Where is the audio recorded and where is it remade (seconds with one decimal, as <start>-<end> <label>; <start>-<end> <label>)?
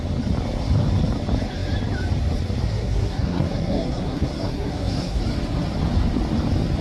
0.0-2.7 recorded; 2.7-5.2 remade; 5.2-6.8 recorded